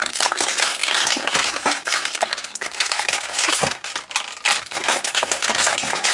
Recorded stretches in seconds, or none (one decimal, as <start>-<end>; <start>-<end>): 3.9-4.6